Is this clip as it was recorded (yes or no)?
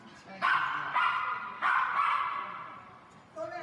yes